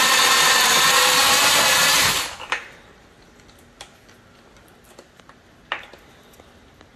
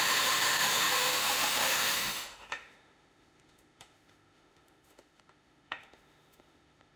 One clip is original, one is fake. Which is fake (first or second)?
second